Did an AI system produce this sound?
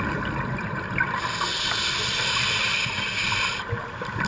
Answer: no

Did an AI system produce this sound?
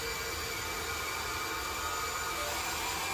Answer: no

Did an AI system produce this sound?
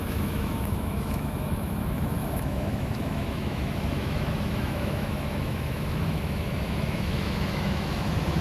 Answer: yes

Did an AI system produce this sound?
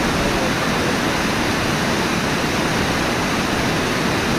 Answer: no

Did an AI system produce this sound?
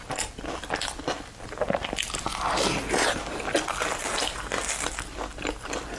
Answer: no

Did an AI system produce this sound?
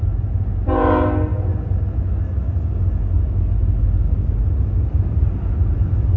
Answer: no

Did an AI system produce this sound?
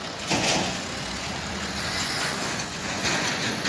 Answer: yes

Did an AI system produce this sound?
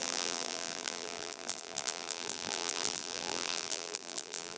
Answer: yes